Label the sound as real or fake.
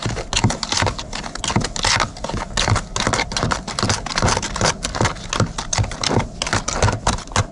real